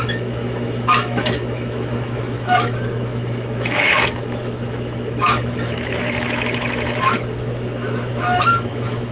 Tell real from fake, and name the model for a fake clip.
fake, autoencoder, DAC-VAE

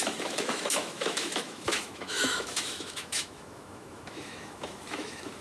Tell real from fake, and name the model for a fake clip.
fake, autoencoder, DAC-VAE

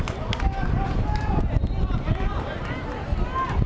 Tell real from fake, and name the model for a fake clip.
real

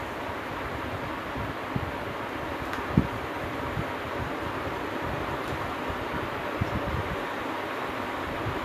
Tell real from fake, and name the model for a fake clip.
real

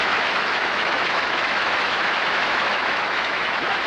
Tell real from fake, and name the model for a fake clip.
fake, autoencoder, DAC-VAE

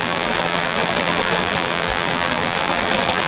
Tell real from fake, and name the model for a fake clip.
fake, vocoder, BigVGAN v2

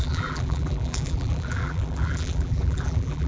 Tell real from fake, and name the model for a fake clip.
fake, vocoder, BigVGAN v2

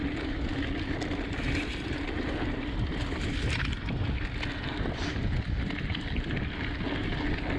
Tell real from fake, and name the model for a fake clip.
real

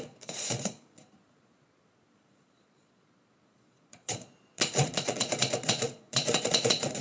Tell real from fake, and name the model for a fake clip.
fake, vocoder, Vocos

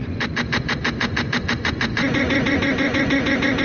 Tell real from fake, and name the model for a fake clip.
fake, vocoder, Vocos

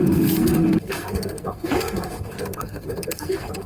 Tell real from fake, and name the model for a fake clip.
fake, codec, SNAC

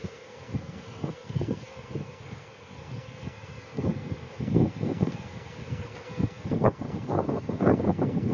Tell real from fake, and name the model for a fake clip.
fake, codec, SNAC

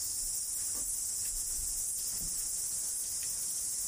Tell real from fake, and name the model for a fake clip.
real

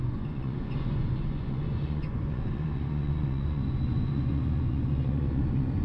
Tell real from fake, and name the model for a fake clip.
fake, vocoder, Vocos